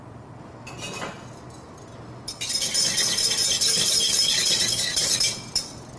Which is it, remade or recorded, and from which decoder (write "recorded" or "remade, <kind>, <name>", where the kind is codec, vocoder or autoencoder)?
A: recorded